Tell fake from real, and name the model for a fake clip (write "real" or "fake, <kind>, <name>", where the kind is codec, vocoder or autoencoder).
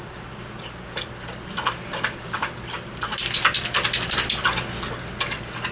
real